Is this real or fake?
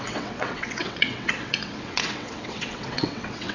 fake